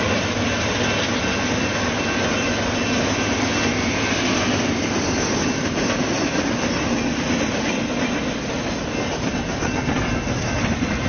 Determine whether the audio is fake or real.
real